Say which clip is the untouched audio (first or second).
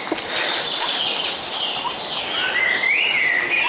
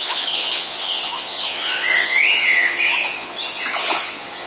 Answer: first